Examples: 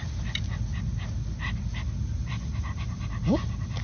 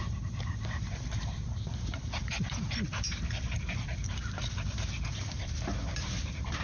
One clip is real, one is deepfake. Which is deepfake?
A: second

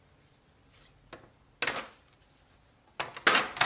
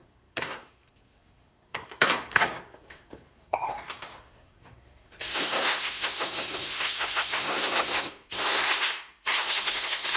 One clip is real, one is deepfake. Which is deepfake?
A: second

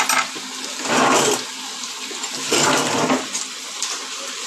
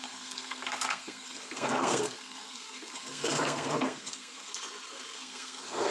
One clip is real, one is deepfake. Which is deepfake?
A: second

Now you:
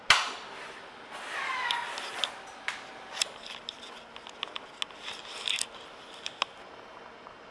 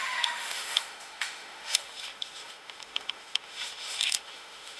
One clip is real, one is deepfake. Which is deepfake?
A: second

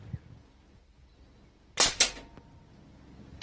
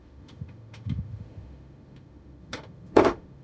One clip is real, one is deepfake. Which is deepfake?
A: second